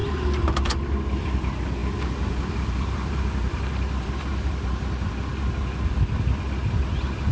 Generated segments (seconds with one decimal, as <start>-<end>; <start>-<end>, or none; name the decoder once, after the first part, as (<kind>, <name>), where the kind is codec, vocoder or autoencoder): 1.1-5.3 (vocoder, BigVGAN v2); 5.9-7.3